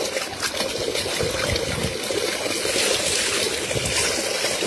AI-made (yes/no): no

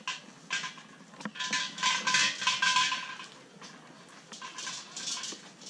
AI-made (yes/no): no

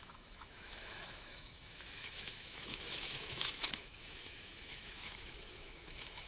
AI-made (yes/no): yes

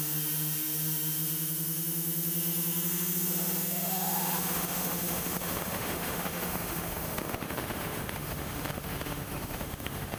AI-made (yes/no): yes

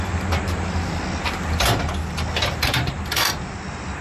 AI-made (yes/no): no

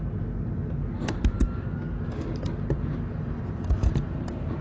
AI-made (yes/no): no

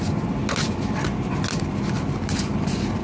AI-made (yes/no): no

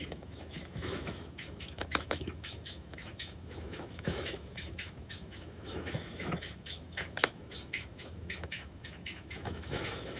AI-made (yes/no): yes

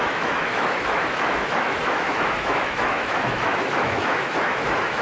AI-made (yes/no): yes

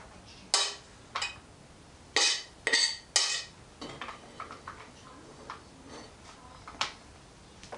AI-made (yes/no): no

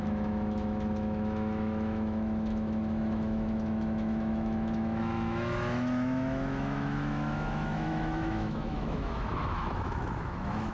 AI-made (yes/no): yes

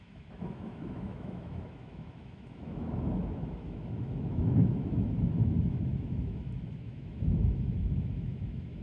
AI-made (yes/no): yes